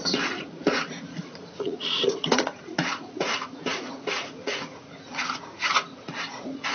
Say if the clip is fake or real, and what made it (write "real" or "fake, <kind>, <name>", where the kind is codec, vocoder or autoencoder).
fake, vocoder, Vocos